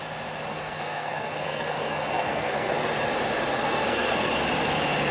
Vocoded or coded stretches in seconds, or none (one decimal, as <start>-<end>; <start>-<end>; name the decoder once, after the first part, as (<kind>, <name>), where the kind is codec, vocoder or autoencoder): 0.5-2.9 (codec, SNAC); 3.5-4.3